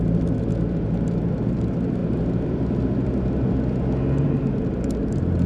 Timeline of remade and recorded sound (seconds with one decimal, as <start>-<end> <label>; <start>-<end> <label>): 0.0-2.0 recorded; 2.0-3.5 remade; 3.5-5.5 recorded